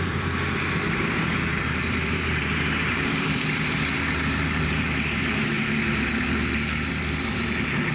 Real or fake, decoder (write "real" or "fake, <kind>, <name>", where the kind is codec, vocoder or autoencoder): fake, vocoder, BigVGAN v2